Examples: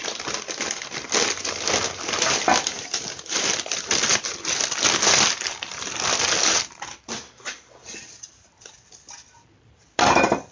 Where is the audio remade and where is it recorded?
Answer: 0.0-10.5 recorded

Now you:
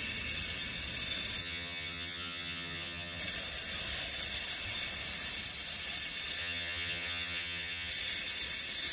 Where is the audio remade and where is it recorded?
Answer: 0.0-1.4 recorded; 1.4-3.2 remade; 3.2-6.4 recorded; 6.4-7.9 remade; 7.9-8.9 recorded

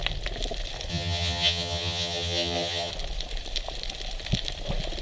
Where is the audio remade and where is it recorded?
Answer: 0.0-0.9 recorded; 0.9-2.9 remade; 2.9-5.0 recorded

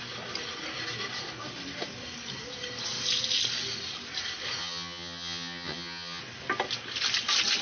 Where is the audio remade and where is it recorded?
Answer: 0.0-4.6 recorded; 4.6-6.2 remade; 6.2-7.6 recorded

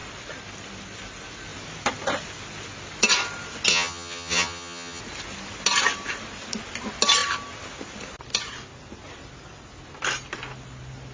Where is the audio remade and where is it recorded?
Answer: 0.0-3.7 recorded; 3.7-5.0 remade; 5.0-11.1 recorded

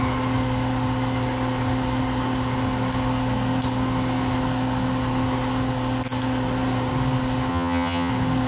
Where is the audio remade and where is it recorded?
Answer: 0.0-7.5 recorded; 7.5-8.1 remade; 8.1-8.5 recorded